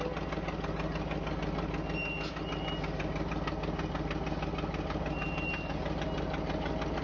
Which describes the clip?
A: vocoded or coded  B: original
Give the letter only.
B